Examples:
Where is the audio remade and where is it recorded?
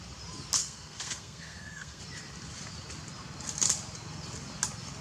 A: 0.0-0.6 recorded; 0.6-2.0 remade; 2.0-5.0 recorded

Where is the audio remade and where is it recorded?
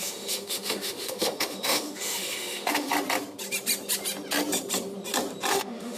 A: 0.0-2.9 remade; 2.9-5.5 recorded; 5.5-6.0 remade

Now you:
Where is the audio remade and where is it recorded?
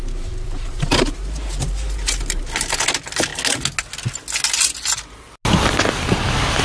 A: 0.0-2.5 remade; 2.5-6.6 recorded